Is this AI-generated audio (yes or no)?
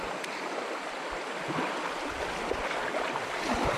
yes